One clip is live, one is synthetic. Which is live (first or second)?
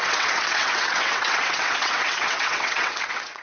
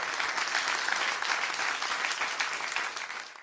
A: second